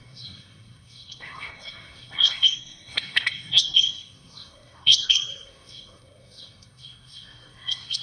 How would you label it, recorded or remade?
remade